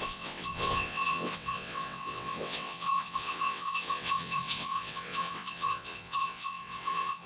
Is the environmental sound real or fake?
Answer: fake